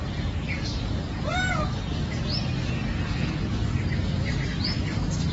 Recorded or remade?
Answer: recorded